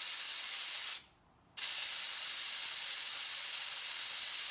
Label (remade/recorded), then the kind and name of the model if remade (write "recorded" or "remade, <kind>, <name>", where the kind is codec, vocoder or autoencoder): recorded